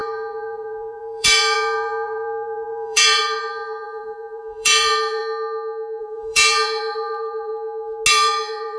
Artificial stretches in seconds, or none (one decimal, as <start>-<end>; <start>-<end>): 0.0-5.2; 6.0-7.5; 8.1-8.8